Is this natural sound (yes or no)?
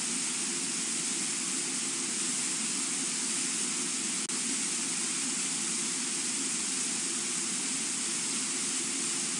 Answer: yes